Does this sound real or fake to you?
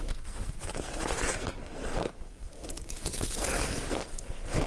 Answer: fake